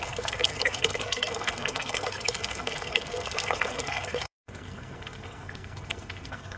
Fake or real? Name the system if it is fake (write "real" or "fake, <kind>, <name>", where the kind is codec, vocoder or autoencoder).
fake, codec, SNAC